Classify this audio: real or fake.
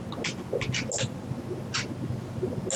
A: real